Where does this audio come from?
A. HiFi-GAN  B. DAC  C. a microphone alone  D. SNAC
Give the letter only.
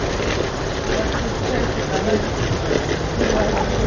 C